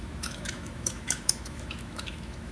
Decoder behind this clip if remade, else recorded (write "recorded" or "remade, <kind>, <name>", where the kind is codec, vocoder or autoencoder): remade, autoencoder, DAC-VAE